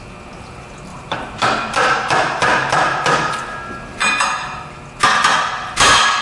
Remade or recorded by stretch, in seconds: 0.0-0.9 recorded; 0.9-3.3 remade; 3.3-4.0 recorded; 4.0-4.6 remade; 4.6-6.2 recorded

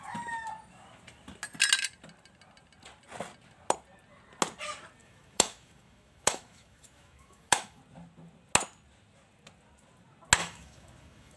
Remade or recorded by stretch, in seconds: 0.0-5.0 recorded; 5.0-7.8 remade; 7.8-10.4 recorded; 10.4-11.4 remade